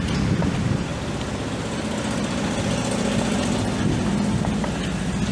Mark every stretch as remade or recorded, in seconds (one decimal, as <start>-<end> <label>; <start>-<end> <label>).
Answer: 0.0-5.3 recorded